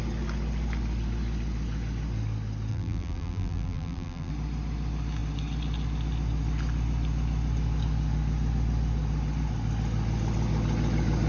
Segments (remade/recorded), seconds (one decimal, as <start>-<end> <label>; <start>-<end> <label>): 0.0-2.7 recorded; 2.7-4.3 remade; 4.3-11.3 recorded